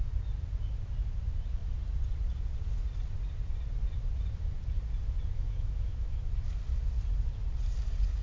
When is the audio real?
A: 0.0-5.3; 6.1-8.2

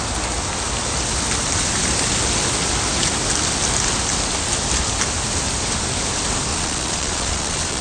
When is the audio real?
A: 0.0-6.5

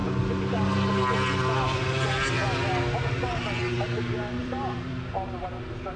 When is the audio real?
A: 0.0-4.4; 4.9-6.0